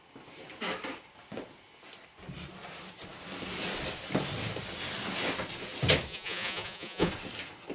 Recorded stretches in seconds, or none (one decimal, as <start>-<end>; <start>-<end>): 0.0-6.1; 7.1-7.7